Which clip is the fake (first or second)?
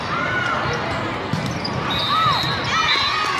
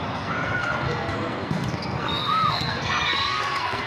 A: second